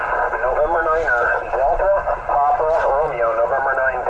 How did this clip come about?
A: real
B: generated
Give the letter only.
A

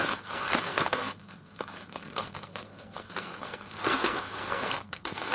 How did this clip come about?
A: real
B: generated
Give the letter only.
B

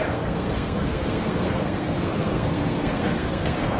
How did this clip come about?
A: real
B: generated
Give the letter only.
B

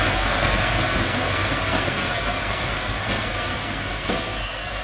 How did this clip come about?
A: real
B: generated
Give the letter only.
B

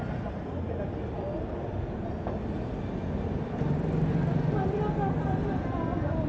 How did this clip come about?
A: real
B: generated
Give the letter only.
A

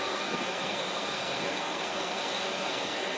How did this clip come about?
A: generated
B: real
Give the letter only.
A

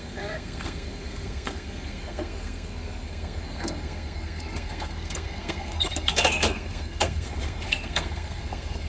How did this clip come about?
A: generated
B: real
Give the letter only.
A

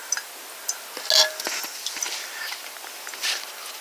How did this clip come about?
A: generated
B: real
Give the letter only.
B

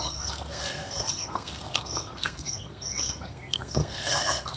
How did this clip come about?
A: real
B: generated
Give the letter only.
B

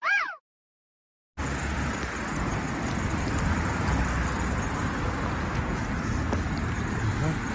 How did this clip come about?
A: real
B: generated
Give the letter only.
A